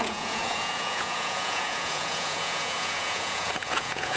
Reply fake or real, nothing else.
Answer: fake